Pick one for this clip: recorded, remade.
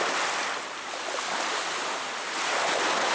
recorded